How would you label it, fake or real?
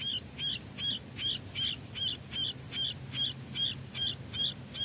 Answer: real